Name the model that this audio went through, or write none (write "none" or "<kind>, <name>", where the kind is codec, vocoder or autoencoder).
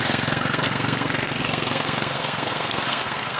codec, SNAC